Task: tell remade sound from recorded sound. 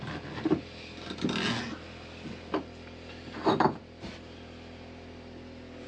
recorded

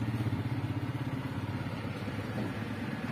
recorded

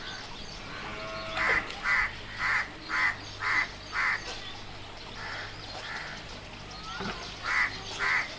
recorded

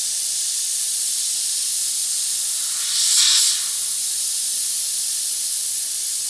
remade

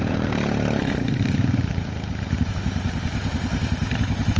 remade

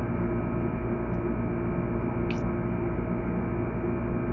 recorded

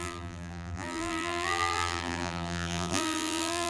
remade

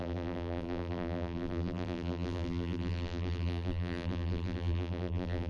remade